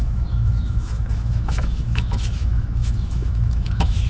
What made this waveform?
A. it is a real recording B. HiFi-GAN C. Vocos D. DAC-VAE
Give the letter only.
D